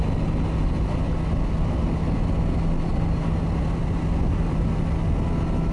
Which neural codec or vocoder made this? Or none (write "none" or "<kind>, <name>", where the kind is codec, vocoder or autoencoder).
none